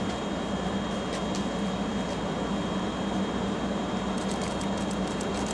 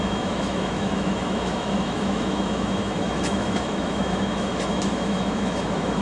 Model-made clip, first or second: second